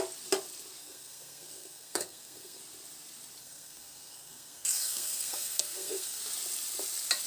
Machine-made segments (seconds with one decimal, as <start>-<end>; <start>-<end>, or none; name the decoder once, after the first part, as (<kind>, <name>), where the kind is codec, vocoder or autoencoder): 0.8-2.6 (codec, SNAC); 3.4-6.2